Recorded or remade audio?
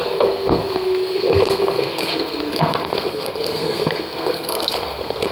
remade